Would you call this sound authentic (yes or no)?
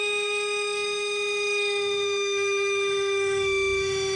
no